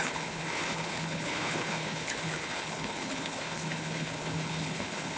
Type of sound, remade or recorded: remade